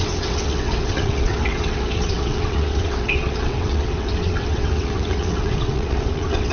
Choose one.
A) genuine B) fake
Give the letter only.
B